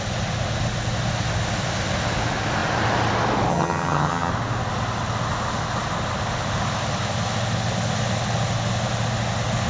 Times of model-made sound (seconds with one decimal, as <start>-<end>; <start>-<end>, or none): 3.5-4.3